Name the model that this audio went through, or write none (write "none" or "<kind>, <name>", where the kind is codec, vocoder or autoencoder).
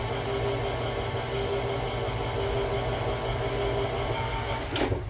none